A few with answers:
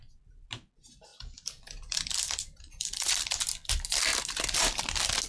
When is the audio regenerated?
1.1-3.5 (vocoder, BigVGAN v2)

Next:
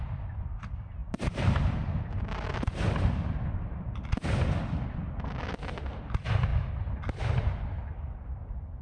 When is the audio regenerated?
1.0-3.5 (vocoder, BigVGAN v2)